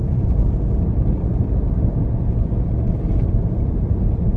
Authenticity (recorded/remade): remade